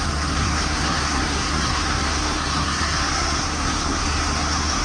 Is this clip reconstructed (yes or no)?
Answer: yes